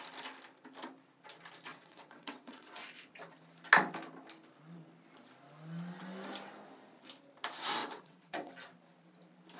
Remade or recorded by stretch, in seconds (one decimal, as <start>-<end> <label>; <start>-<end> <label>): 0.0-1.7 recorded; 1.7-2.7 remade; 2.7-7.8 recorded; 7.8-8.5 remade; 8.5-9.6 recorded